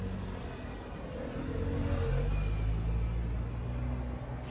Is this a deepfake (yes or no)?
no